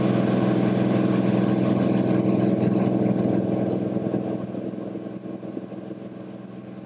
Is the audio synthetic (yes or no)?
no